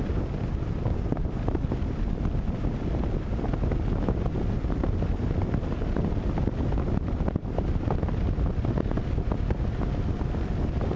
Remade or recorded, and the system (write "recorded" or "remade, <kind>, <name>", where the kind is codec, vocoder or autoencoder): recorded